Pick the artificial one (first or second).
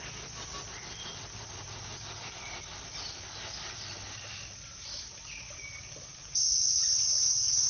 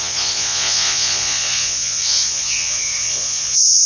second